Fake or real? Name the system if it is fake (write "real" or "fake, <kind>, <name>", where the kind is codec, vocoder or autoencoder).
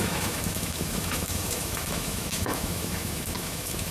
fake, autoencoder, DAC-VAE